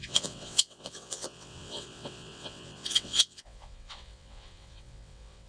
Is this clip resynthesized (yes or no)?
yes